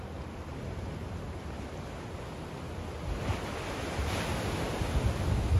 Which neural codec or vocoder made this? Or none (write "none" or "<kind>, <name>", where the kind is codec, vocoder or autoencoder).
none